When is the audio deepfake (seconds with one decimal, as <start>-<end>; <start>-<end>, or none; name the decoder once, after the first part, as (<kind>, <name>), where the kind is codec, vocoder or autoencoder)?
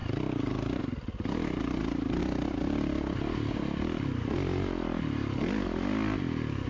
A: none